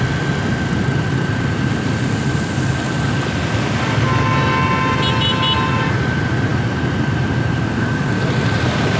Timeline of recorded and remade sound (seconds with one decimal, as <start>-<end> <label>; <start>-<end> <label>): 0.0-9.0 recorded